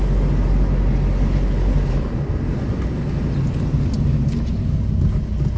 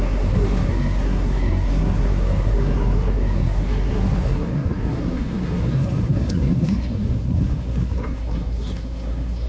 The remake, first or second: second